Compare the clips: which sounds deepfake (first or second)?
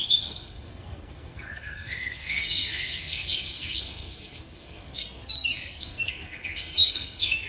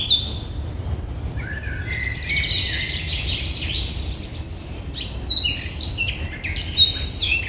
first